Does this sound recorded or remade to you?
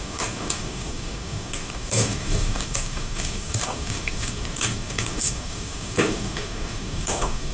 remade